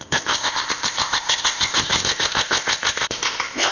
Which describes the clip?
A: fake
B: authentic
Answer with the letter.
A